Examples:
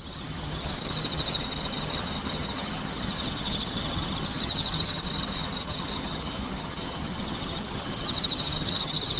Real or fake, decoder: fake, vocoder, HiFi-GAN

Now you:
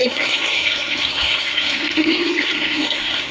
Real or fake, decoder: fake, codec, SNAC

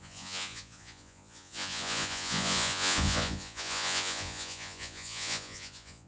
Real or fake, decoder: fake, vocoder, Vocos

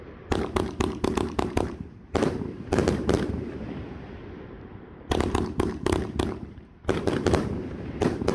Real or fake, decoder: fake, vocoder, BigVGAN v2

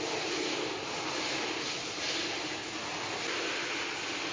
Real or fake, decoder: real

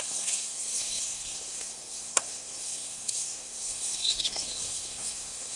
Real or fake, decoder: fake, codec, SNAC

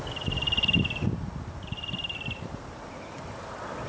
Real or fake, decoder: real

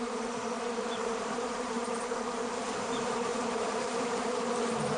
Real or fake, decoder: fake, vocoder, BigVGAN v2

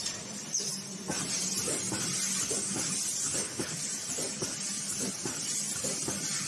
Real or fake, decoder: real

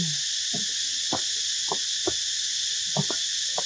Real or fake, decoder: real